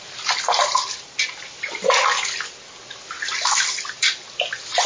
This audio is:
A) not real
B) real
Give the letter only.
B